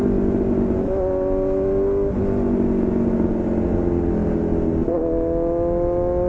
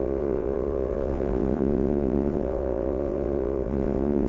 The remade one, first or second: second